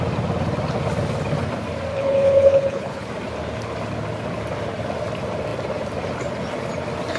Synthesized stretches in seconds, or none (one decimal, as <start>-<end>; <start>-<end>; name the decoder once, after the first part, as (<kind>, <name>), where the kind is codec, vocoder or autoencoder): 1.9-3.1 (codec, HILCodec)